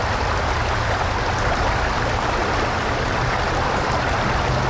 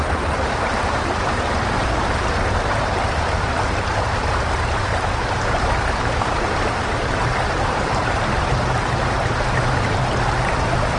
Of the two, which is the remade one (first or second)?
second